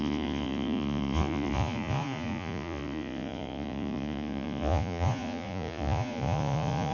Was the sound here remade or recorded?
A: remade